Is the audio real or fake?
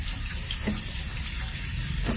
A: real